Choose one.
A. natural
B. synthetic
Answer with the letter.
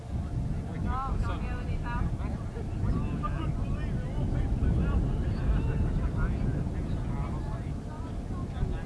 A